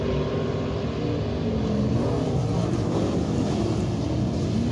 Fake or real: real